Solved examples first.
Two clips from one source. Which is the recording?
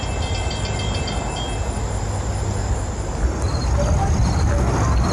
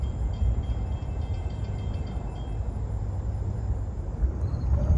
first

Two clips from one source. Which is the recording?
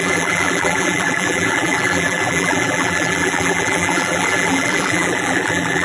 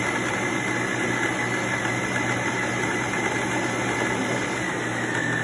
second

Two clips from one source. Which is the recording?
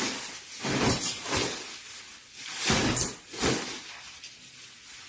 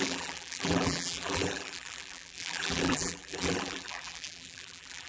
first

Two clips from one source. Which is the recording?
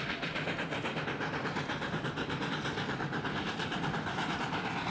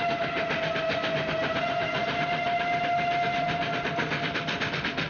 second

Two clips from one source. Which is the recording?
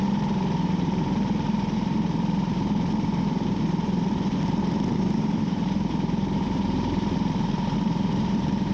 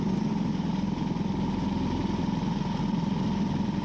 second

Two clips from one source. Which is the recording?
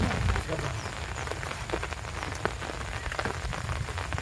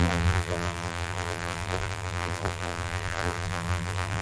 first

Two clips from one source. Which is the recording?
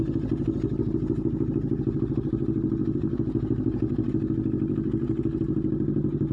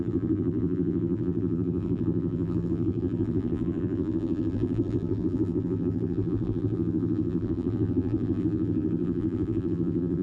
first